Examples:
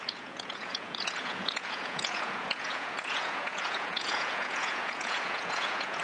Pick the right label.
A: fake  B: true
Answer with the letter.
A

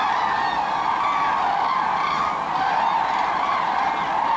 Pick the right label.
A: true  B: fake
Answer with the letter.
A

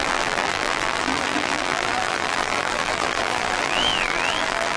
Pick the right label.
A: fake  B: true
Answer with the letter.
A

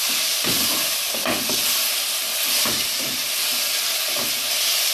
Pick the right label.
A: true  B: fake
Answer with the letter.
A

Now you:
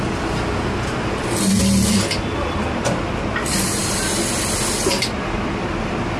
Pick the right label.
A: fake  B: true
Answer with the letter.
B